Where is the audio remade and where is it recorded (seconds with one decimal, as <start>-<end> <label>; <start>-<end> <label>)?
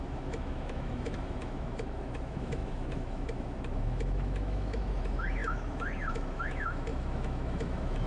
0.0-8.1 remade